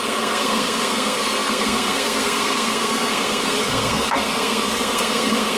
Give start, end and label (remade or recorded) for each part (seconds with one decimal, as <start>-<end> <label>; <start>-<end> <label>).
0.0-5.6 remade